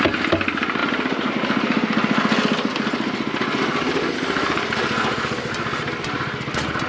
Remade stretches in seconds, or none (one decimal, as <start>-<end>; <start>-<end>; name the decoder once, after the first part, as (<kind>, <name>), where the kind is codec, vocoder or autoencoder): 0.8-1.3 (vocoder, BigVGAN v2); 2.7-6.9